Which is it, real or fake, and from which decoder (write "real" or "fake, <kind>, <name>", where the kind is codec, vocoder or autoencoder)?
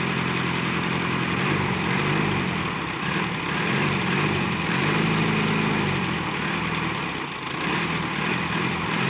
real